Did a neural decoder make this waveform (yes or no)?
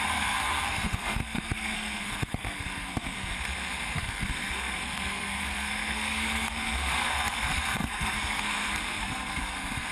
yes